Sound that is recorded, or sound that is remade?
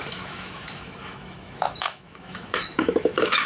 remade